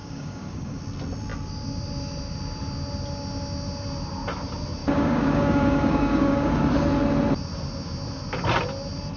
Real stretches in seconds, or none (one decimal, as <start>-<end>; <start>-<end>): 0.8-4.8; 6.6-9.2